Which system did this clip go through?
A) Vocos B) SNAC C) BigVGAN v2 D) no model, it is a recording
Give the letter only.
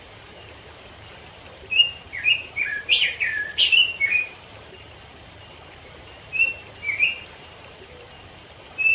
C